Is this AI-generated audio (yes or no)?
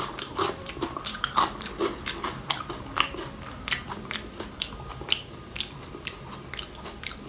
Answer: yes